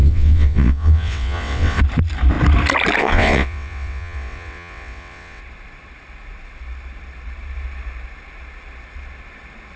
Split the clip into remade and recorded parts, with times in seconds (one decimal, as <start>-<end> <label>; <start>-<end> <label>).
0.0-1.8 remade; 1.8-3.0 recorded; 3.0-5.4 remade; 5.4-9.8 recorded